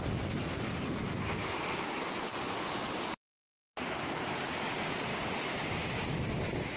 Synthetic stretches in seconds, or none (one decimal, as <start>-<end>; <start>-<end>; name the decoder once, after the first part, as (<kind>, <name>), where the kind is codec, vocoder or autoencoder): 5.1-6.2 (codec, DAC)